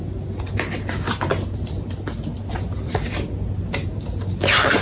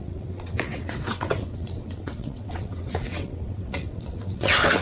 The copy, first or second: second